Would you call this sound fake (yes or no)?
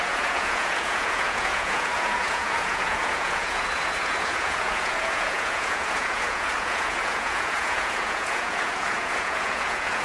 yes